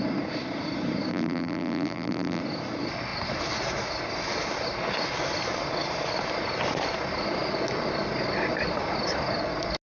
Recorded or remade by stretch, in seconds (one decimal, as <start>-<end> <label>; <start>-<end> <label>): 0.0-1.1 recorded; 1.1-2.4 remade; 2.4-9.9 recorded